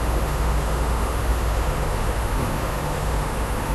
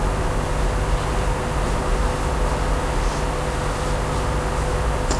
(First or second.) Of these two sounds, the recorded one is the second